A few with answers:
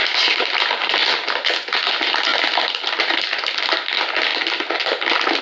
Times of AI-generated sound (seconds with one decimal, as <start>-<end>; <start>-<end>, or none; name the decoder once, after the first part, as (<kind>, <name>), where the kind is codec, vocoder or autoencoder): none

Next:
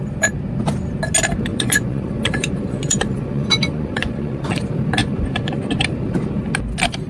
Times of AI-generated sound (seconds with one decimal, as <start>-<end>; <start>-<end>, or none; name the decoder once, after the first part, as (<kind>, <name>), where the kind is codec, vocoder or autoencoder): 1.5-4.6 (vocoder, Vocos); 5.0-5.6

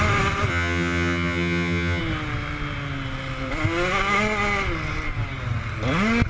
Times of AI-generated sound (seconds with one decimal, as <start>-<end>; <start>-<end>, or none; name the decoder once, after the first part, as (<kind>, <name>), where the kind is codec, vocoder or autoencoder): 0.5-2.0 (vocoder, HiFi-GAN)